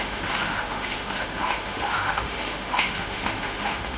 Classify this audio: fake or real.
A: fake